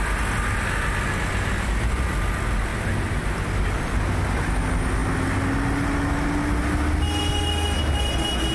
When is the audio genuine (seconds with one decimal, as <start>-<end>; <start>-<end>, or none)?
0.0-2.7; 4.0-8.5